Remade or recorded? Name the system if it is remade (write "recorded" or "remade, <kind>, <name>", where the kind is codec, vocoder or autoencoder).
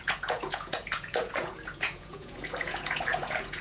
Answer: remade, vocoder, Vocos